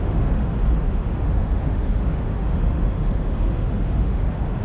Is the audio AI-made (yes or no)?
yes